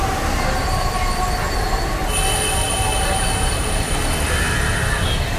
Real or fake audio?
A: real